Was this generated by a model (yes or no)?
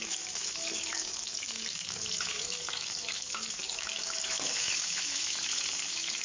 yes